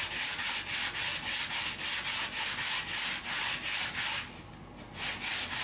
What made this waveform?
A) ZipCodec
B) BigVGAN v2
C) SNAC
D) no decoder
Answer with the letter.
D